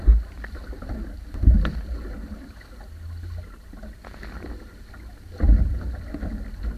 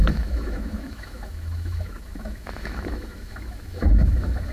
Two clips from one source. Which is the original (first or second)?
first